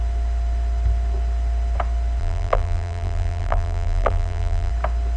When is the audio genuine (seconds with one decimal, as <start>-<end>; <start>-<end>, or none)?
0.0-2.2; 4.7-5.2